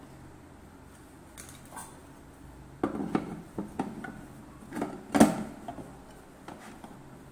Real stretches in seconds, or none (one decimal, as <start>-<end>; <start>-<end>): 0.0-2.0; 4.4-7.3